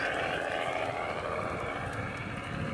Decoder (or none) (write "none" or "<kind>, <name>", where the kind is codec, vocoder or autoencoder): none